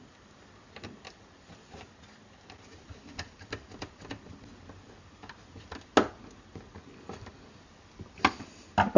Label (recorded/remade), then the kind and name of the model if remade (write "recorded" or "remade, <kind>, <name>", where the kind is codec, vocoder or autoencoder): recorded